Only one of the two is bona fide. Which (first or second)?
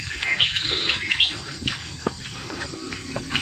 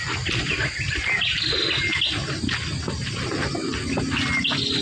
second